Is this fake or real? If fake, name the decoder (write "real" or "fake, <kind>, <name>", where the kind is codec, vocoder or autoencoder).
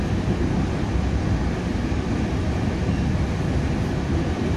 real